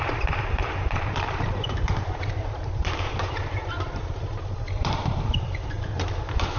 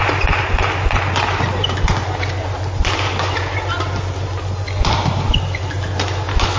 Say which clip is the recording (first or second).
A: second